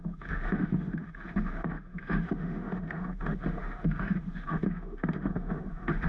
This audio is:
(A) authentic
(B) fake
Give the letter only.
B